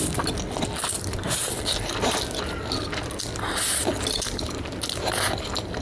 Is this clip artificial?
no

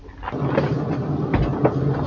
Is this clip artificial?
no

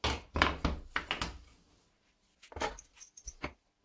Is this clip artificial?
no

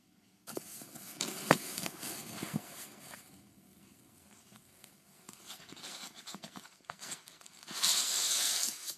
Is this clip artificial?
yes